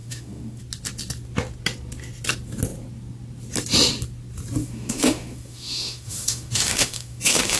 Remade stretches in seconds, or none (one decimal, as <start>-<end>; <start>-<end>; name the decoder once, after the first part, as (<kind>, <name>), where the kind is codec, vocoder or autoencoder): 0.0-0.6 (autoencoder, DAC-VAE); 4.6-7.6